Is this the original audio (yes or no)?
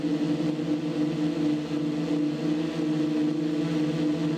yes